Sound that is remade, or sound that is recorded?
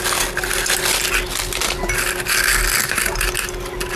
recorded